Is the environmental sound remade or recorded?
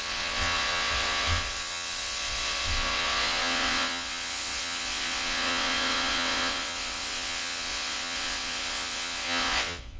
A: remade